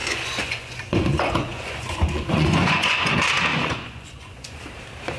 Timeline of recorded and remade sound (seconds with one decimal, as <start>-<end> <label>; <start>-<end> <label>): 0.0-3.1 remade; 3.1-3.5 recorded; 3.5-4.6 remade; 4.6-5.2 recorded